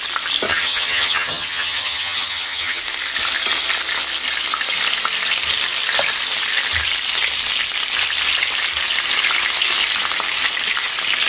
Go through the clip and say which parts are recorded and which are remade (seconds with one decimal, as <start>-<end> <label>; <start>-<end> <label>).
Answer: 0.0-0.5 recorded; 0.5-2.8 remade; 2.8-11.3 recorded